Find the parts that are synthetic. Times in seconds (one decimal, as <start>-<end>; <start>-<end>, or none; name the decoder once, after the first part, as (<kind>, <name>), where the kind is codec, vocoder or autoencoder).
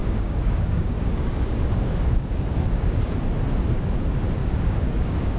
0.0-3.2 (codec, DAC); 4.4-5.4